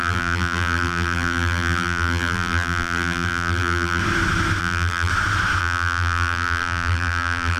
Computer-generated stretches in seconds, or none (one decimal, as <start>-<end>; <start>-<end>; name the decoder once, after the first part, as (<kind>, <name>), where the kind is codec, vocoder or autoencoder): 0.0-4.0 (vocoder, BigVGAN v2); 4.6-5.1; 5.6-7.6